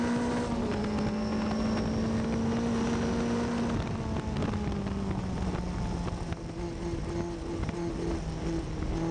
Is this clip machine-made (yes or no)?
no